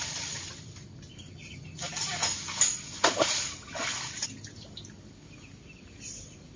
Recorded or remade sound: recorded